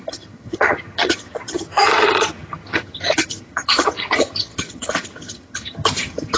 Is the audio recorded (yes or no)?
no